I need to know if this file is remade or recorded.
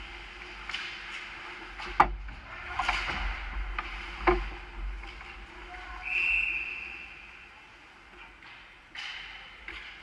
recorded